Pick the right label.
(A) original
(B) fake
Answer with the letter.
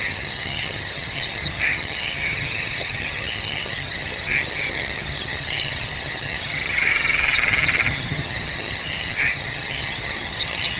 B